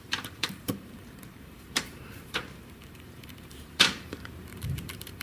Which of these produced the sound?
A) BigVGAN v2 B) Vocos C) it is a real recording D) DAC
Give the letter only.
A